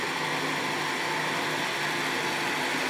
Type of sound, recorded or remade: recorded